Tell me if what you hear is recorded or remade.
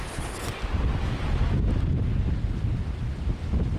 recorded